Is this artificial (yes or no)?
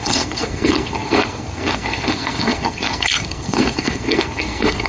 yes